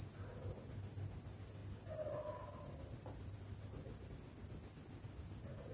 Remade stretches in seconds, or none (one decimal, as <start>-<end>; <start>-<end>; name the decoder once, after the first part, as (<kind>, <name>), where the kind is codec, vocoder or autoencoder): none

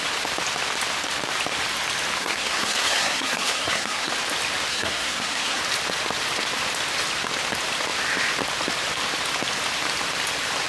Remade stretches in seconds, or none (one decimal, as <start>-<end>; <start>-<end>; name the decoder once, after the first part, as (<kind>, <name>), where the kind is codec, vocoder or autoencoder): 2.2-4.1 (codec, SNAC); 4.7-5.6

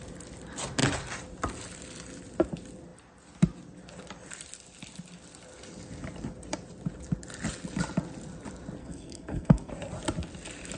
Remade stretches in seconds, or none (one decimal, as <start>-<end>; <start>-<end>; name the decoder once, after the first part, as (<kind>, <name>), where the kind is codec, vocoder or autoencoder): 8.8-9.7 (codec, SNAC)

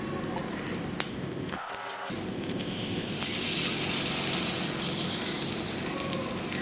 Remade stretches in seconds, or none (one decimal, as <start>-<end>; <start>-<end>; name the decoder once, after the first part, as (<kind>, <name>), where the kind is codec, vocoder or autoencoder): 1.1-1.7 (codec, ZipCodec); 2.3-3.1